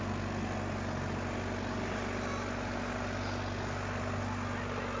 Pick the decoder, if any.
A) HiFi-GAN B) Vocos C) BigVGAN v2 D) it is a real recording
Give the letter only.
D